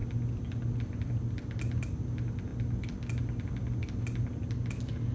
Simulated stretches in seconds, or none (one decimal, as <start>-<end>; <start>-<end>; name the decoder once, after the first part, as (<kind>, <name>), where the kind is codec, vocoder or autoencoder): none